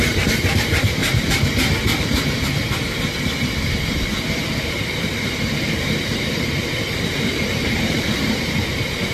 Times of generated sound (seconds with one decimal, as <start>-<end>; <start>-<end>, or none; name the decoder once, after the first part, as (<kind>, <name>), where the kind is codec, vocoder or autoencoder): 0.0-1.0 (vocoder, BigVGAN v2); 4.6-9.1